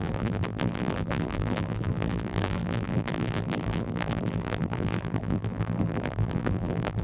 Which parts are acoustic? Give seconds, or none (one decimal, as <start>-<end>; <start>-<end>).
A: none